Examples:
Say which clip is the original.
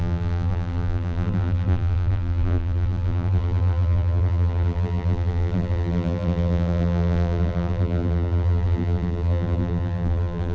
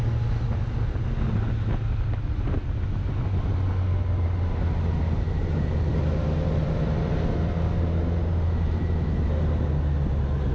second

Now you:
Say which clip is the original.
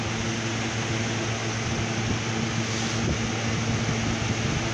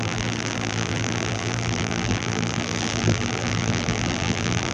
first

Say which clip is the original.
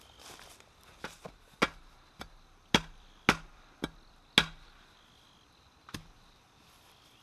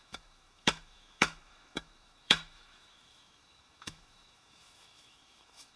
first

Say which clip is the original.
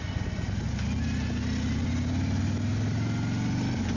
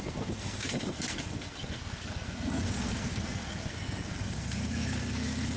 first